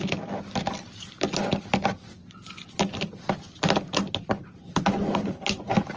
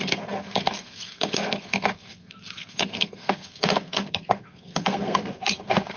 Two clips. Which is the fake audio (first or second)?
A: second